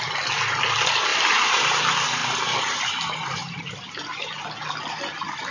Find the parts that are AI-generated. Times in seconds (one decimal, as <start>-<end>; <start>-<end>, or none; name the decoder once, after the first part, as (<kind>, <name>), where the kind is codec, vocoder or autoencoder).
1.1-1.8 (vocoder, BigVGAN v2); 2.2-3.6